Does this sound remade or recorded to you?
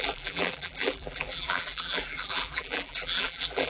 remade